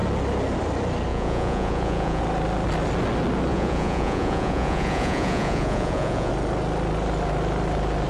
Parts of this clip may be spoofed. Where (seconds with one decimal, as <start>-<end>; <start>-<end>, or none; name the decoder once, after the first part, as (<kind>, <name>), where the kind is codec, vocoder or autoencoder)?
1.1-2.2 (vocoder, Vocos); 3.5-6.3